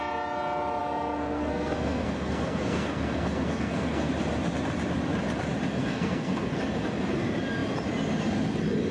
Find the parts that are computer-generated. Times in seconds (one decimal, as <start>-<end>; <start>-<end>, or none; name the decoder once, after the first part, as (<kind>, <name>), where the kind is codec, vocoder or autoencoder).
0.8-4.1 (codec, SNAC); 5.8-6.6